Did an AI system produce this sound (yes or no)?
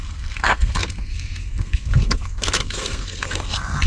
yes